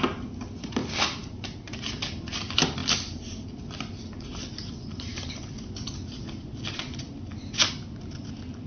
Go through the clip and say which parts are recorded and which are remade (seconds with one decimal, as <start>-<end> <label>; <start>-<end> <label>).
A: 0.0-8.7 recorded